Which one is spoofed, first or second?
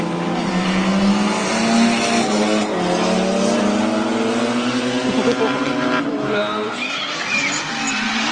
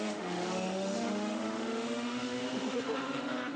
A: second